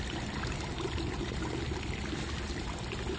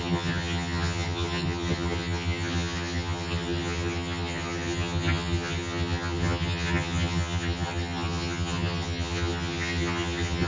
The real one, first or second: first